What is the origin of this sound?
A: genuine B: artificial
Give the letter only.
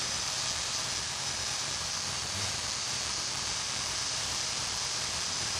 B